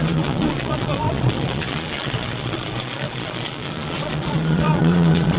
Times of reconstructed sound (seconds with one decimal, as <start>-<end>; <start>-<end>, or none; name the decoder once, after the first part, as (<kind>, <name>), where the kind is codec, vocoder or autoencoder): 0.0-5.4 (vocoder, Vocos)